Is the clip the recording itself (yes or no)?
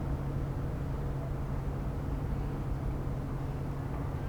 yes